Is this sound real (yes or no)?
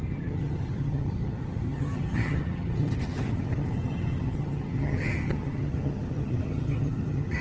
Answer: no